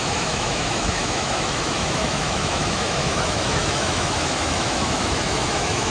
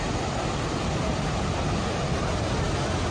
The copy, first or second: first